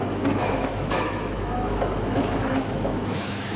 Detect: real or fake fake